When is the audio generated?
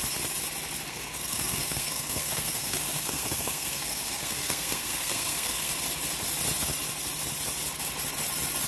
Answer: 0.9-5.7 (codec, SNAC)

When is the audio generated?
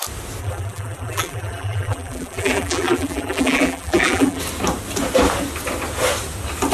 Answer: 0.4-4.4 (vocoder, BigVGAN v2)